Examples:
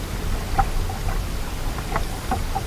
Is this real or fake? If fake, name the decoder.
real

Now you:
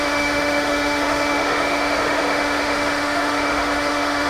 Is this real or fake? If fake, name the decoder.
fake, autoencoder, DAC-VAE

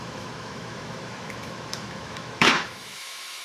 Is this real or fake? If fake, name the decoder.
fake, autoencoder, DAC-VAE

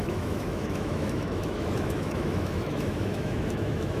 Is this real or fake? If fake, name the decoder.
fake, autoencoder, DAC-VAE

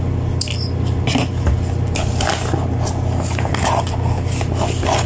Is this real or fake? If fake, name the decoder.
real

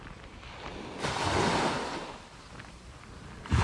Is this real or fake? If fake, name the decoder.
real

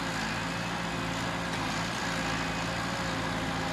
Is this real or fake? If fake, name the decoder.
real